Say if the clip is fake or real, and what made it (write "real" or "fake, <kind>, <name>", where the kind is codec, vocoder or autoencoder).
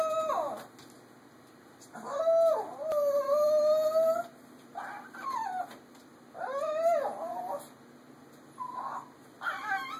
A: real